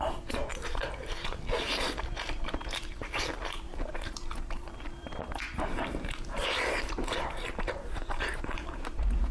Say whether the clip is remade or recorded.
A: remade